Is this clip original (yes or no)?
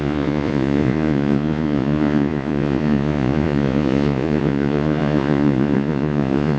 no